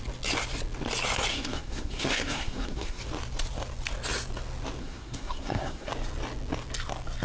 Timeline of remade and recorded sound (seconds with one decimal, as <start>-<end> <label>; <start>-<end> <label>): 0.0-1.3 recorded; 1.3-3.0 remade; 3.0-4.8 recorded; 4.8-5.9 remade; 5.9-7.2 recorded

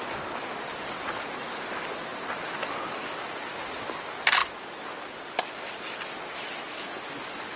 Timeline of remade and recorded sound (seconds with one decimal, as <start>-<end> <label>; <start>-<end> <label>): 0.0-7.6 recorded

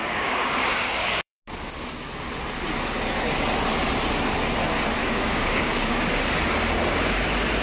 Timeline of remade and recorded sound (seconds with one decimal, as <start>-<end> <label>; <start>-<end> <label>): 0.0-1.4 remade; 1.4-5.0 recorded; 5.0-6.1 remade; 6.1-7.6 recorded

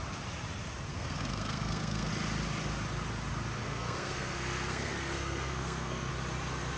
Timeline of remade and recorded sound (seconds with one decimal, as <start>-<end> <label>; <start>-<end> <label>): 0.0-0.9 recorded; 0.9-2.1 remade; 2.1-3.6 recorded; 3.6-6.1 remade; 6.1-6.8 recorded

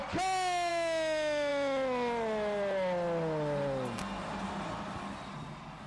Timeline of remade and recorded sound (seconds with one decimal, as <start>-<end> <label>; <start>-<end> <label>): 0.0-5.9 recorded